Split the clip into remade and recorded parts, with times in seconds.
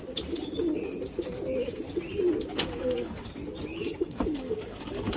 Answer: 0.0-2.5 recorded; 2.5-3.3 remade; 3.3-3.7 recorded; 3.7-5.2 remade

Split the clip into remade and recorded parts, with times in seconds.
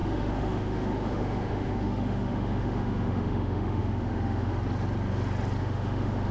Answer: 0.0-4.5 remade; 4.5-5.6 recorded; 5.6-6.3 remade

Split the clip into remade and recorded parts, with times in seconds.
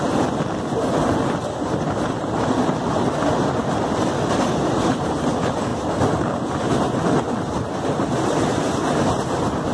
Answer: 0.0-9.7 recorded